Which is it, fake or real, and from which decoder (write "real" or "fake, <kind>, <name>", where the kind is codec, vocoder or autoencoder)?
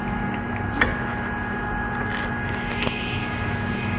real